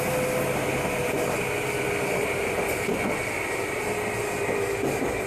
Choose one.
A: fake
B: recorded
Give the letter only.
B